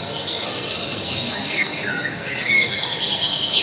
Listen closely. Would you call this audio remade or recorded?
remade